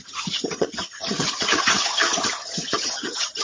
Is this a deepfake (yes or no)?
yes